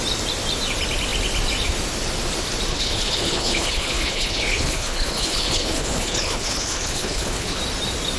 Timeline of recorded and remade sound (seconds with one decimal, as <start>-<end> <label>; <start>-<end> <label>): 0.0-2.7 recorded; 2.7-7.6 remade; 7.6-8.2 recorded